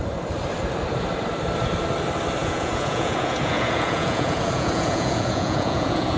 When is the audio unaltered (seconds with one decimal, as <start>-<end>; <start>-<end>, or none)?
0.0-2.4